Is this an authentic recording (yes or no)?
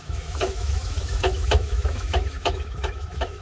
no